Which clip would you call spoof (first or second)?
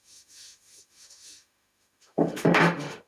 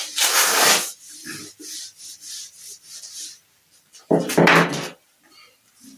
first